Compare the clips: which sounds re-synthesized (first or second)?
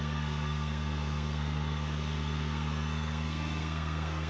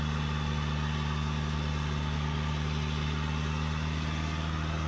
first